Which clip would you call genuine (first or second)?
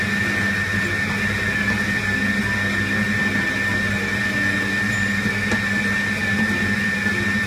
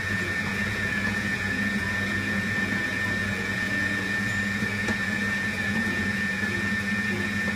first